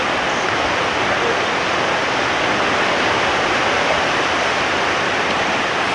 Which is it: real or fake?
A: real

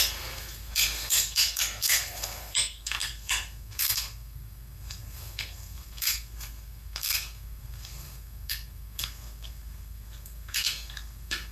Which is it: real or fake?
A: fake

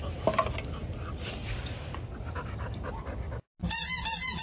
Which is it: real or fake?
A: real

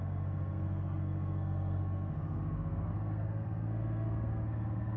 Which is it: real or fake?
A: fake